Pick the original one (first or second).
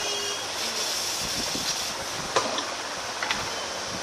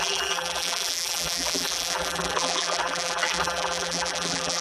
first